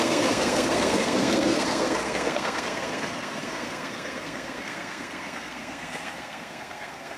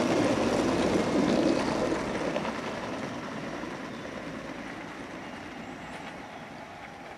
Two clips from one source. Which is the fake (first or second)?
first